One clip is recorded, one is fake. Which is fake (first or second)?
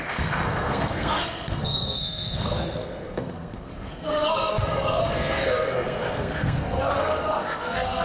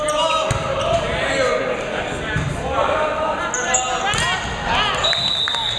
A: first